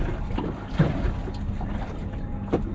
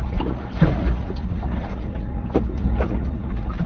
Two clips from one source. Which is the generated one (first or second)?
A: second